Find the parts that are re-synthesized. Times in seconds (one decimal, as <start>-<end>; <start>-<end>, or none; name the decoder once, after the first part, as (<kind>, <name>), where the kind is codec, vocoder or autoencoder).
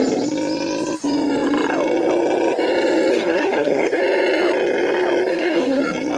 3.1-4.0 (codec, SNAC); 5.3-5.8